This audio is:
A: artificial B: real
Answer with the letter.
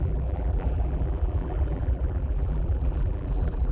A